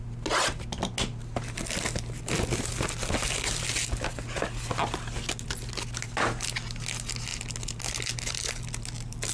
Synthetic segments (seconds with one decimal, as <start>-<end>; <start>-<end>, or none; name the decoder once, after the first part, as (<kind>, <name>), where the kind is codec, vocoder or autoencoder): none